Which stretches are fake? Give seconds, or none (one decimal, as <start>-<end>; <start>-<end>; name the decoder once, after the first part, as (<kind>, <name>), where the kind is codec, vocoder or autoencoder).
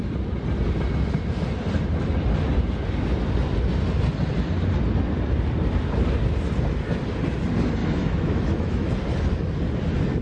7.8-8.9 (autoencoder, DAC-VAE)